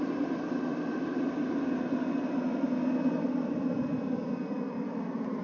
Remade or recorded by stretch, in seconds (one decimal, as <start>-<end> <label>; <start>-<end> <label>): 0.0-5.4 recorded